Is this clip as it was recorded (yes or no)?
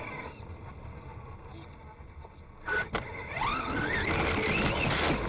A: yes